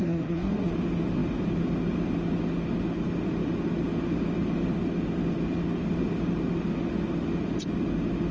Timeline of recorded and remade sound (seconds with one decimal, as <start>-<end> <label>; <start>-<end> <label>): 0.0-0.7 remade; 0.7-8.3 recorded